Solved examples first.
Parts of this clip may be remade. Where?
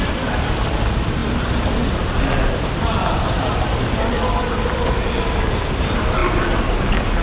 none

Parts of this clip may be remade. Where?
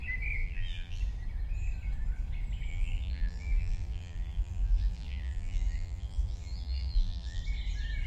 0.4-1.0 (vocoder, BigVGAN v2); 2.7-7.4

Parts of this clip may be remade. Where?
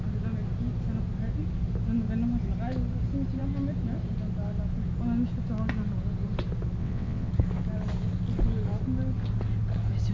6.8-7.3 (vocoder, WaveNeXt)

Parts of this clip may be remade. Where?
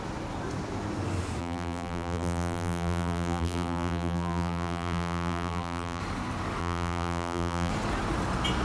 1.4-6.0 (vocoder, BigVGAN v2); 6.6-7.7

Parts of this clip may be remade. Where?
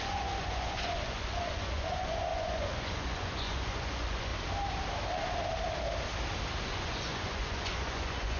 0.0-4.3 (vocoder, Vocos); 6.6-8.4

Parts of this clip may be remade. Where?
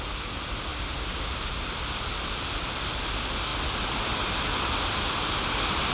none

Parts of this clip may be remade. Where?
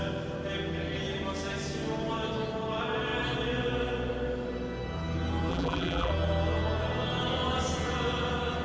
5.5-6.1 (vocoder, BigVGAN v2)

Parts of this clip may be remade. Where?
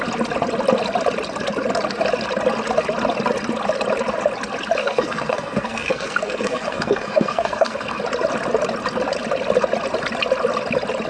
4.8-8.0 (codec, SNAC)